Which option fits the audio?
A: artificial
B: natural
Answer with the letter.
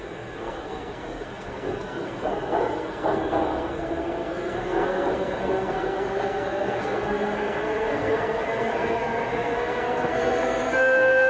A